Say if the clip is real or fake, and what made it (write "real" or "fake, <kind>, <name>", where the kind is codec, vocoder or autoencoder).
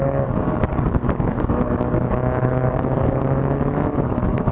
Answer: fake, codec, DAC